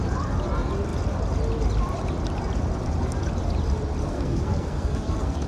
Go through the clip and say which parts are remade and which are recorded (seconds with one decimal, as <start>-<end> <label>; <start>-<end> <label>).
0.0-4.0 recorded; 4.0-5.5 remade